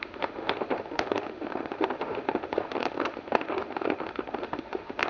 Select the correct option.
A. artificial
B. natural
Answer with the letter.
A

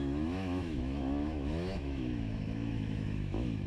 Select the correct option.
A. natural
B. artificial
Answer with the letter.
B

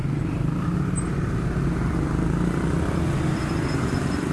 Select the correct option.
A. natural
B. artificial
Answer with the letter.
A